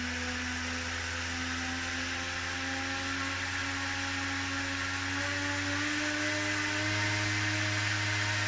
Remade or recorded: recorded